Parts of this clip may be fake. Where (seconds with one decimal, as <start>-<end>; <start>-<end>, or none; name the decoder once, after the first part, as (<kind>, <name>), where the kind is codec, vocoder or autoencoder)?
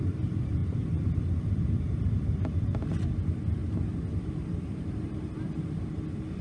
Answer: none